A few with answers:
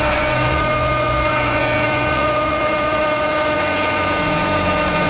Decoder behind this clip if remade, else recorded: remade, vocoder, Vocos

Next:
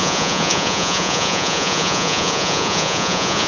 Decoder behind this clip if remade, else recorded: remade, vocoder, Vocos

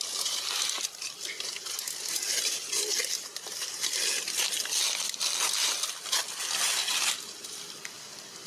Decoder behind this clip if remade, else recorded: recorded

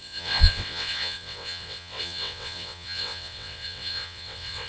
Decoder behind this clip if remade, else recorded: remade, vocoder, WaveNeXt